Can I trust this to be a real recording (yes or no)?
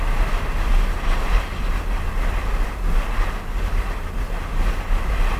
yes